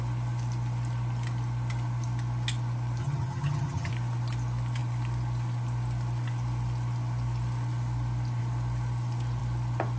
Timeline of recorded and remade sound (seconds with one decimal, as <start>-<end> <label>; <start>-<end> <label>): 0.0-3.0 recorded; 3.0-3.9 remade; 3.9-10.0 recorded